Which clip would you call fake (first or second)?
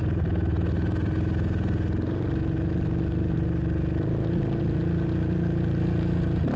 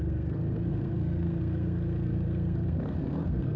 second